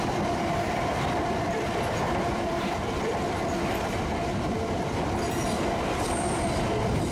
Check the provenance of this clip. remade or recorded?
recorded